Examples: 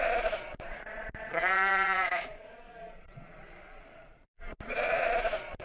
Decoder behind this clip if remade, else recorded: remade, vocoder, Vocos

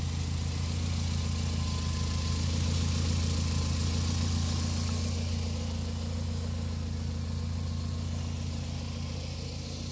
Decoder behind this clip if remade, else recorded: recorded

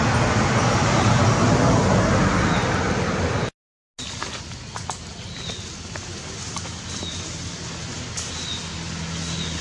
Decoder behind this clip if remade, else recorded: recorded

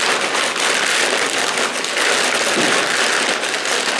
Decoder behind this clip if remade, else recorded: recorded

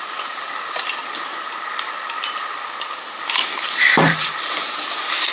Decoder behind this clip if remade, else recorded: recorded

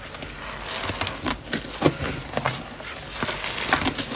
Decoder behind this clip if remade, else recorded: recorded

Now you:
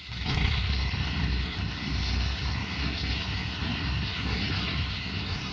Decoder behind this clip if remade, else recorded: remade, codec, SNAC